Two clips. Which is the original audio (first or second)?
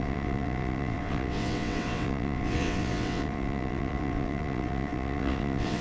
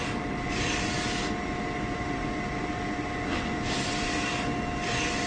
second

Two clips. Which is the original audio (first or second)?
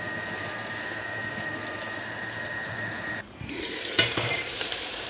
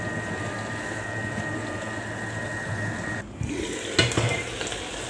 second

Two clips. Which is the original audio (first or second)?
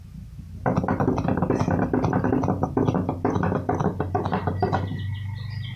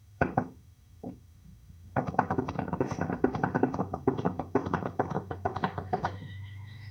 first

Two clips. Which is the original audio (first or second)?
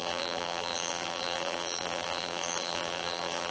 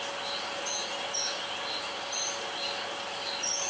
second